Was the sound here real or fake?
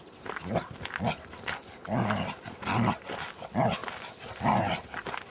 real